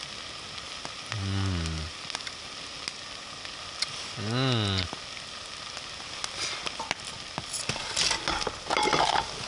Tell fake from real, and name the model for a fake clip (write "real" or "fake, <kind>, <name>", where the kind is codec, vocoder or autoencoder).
real